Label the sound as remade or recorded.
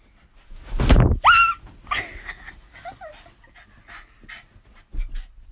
recorded